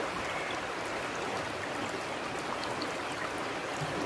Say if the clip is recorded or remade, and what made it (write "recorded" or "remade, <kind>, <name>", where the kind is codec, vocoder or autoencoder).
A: recorded